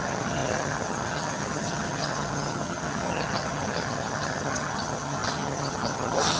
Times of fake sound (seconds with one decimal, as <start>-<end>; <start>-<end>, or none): 0.0-6.4